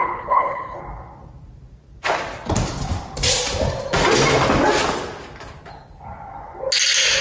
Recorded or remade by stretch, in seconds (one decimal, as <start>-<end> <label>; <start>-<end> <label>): 0.0-0.8 remade; 0.8-7.2 recorded